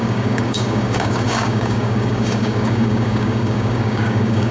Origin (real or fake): fake